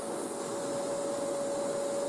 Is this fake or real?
fake